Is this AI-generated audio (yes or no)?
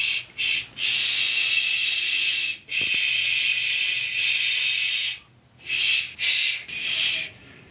no